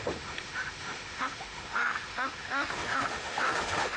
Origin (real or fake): fake